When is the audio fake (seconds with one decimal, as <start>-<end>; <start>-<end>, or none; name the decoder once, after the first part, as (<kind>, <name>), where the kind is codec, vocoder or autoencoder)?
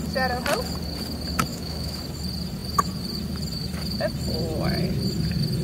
1.5-2.0 (autoencoder, DAC-VAE)